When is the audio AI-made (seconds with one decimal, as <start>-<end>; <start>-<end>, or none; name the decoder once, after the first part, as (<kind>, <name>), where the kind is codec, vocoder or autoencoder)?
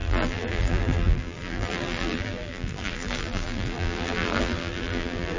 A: 0.0-5.4 (vocoder, BigVGAN v2)